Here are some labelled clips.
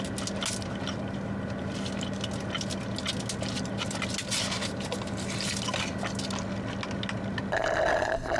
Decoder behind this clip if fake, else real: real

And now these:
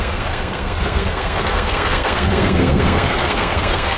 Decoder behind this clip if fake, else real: fake, codec, SNAC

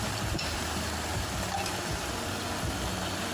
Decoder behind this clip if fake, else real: real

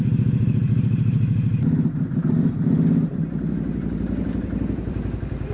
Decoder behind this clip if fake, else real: fake, vocoder, BigVGAN v2